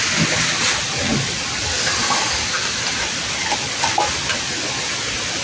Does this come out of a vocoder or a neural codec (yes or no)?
no